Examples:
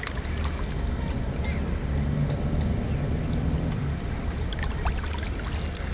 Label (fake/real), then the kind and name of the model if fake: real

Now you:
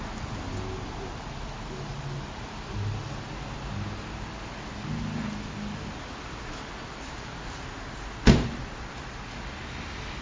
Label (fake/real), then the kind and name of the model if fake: real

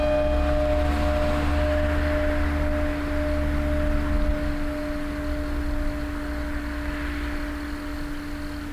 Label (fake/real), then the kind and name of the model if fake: real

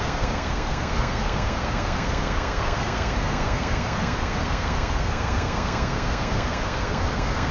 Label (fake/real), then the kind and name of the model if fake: fake, codec, SNAC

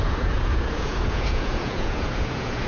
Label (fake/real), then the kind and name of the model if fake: fake, vocoder, Vocos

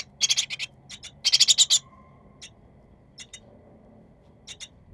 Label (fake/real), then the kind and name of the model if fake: real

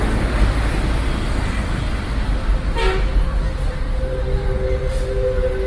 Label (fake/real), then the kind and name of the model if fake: real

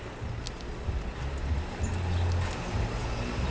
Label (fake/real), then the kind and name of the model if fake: real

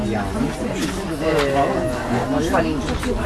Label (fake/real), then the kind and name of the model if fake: real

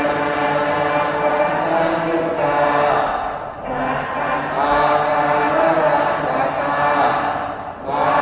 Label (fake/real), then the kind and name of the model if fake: real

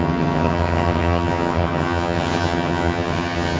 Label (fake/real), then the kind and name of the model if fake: fake, vocoder, HiFi-GAN